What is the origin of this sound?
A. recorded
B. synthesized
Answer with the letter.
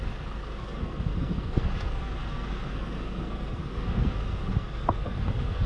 B